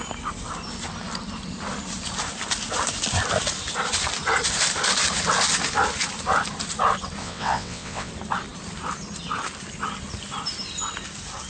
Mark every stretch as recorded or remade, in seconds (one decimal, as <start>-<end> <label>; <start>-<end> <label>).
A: 0.0-7.2 recorded; 7.2-8.1 remade; 8.1-11.5 recorded